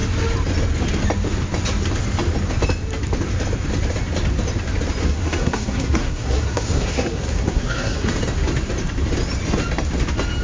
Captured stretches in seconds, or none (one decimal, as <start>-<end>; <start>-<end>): 0.0-5.0; 8.1-10.4